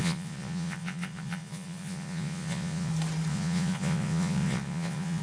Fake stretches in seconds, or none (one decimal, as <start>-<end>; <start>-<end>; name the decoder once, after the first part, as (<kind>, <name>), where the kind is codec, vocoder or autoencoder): 0.0-2.9 (vocoder, Vocos); 3.3-5.2